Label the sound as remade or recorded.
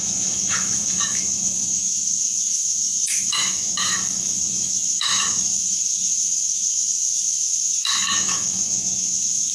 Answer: remade